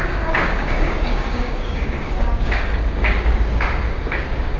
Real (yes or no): no